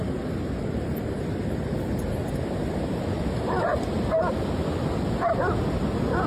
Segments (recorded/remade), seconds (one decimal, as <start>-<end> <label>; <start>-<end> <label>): 0.0-2.2 remade; 2.2-2.9 recorded; 2.9-3.7 remade; 3.7-6.3 recorded